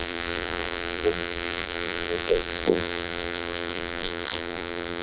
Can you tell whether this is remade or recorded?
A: remade